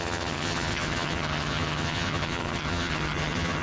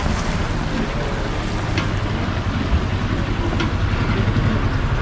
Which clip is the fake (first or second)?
first